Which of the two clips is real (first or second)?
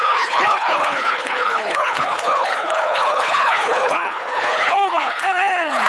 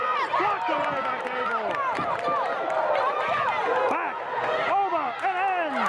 second